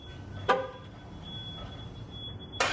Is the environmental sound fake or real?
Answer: real